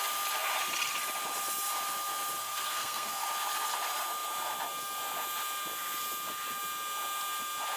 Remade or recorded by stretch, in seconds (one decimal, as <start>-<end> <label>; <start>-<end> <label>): 0.0-2.4 recorded; 2.4-3.2 remade; 3.2-7.8 recorded